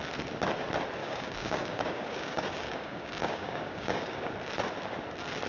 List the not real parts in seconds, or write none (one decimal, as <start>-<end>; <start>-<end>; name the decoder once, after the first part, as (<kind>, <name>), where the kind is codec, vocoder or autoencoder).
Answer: 1.0-4.3 (codec, DAC)